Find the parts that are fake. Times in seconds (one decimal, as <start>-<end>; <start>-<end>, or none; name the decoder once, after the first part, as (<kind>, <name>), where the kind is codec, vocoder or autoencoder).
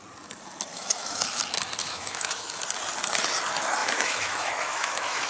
0.7-1.4 (autoencoder, DAC-VAE); 1.8-2.5; 3.8-5.3